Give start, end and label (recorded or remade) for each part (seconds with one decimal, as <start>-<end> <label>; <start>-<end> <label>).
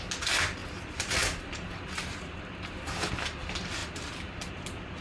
0.0-0.6 recorded; 0.6-3.1 remade; 3.1-3.8 recorded; 3.8-4.5 remade; 4.5-5.0 recorded